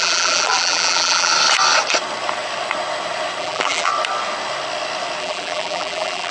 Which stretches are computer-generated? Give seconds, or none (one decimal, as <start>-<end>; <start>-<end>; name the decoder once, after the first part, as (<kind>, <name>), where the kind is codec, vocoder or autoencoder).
0.0-1.3 (vocoder, BigVGAN v2); 3.4-3.9; 5.2-6.3